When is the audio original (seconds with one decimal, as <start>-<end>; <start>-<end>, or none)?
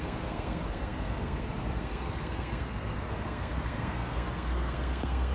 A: none